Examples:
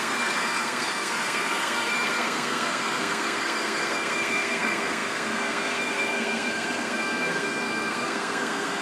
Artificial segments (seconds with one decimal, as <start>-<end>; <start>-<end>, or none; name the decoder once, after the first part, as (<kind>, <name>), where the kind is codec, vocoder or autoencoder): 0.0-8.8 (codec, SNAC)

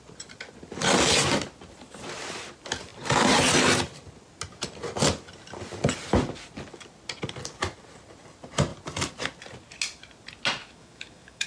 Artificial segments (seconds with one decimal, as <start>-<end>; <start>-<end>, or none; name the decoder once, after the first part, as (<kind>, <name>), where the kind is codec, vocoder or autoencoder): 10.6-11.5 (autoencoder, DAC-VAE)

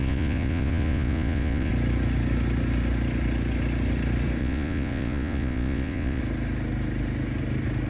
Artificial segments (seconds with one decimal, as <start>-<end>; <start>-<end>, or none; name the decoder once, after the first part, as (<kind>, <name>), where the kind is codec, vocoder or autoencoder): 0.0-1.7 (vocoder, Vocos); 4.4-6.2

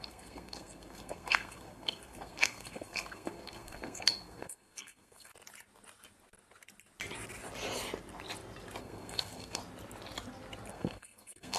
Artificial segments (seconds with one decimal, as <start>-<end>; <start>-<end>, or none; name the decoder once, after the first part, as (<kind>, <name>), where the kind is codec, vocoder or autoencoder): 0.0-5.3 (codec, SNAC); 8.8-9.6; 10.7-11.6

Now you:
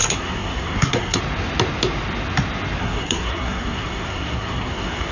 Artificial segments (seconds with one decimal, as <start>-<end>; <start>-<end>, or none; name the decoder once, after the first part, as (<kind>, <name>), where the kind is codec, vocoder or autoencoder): 0.0-1.2 (codec, SNAC); 2.8-5.1

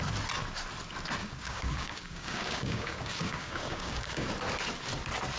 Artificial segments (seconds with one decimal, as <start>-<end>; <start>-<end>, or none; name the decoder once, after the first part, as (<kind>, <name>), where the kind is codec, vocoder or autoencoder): 1.2-4.3 (codec, DAC)